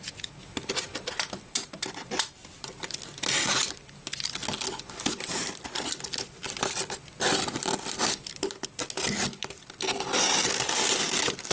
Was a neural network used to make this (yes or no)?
no